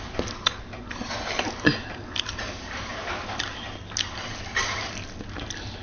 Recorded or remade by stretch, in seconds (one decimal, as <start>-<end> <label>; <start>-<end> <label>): 0.0-5.8 recorded